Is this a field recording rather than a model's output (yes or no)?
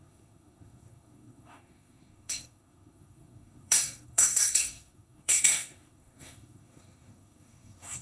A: no